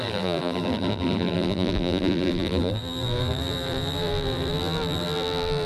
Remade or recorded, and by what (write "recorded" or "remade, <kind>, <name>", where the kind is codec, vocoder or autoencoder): remade, vocoder, BigVGAN v2